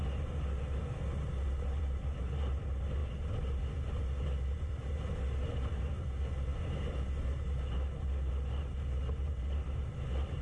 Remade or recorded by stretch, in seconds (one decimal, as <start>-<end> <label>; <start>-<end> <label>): 0.0-10.4 recorded